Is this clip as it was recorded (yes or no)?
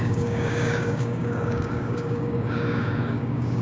no